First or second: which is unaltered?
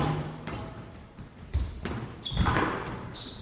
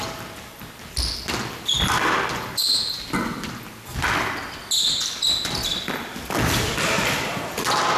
second